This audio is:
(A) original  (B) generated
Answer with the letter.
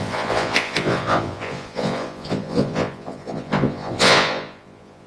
B